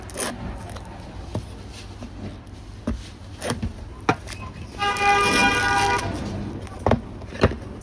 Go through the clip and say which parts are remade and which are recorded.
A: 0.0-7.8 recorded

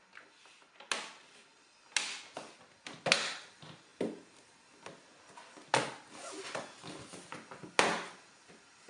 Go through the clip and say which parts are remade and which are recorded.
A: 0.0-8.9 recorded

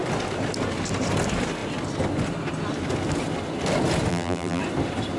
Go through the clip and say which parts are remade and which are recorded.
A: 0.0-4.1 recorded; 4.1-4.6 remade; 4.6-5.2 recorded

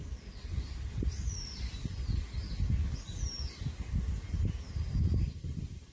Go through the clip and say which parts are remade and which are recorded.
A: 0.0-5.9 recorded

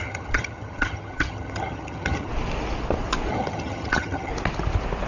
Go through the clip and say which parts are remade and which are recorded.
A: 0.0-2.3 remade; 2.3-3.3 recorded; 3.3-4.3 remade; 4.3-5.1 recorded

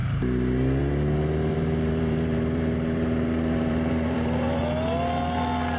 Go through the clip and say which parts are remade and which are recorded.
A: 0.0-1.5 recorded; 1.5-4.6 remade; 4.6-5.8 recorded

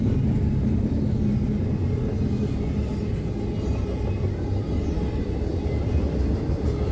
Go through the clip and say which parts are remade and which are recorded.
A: 0.0-6.9 recorded

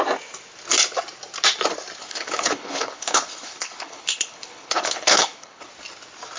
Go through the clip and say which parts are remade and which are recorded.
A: 0.0-2.0 recorded; 2.0-5.7 remade; 5.7-6.4 recorded